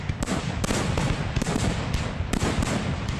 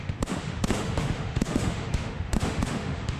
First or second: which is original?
first